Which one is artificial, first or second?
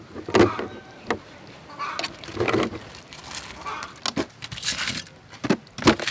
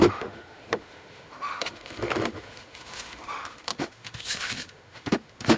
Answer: second